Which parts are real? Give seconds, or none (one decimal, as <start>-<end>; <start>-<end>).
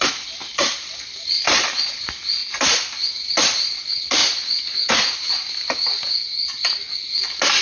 2.4-3.1; 4.2-7.1